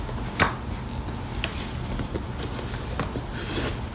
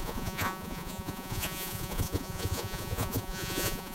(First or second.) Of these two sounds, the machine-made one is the second